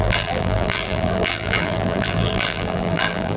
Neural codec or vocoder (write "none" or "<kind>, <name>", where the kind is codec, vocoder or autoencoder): vocoder, BigVGAN v2